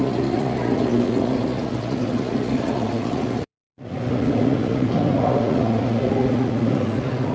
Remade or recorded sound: remade